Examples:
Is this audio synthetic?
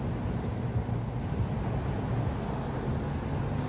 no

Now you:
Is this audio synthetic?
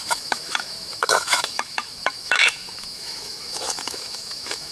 yes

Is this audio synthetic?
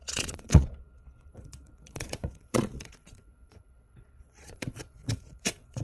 yes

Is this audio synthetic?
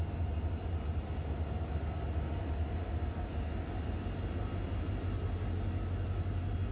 no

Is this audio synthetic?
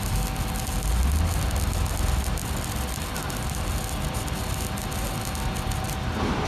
no